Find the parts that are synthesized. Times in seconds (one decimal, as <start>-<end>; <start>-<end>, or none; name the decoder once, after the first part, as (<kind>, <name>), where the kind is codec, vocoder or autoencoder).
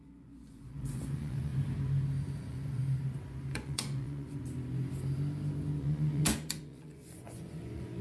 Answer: 0.0-1.5 (vocoder, Vocos); 2.4-2.8; 3.5-4.4; 5.8-8.0